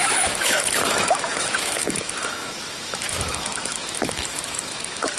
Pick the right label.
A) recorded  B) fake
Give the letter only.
B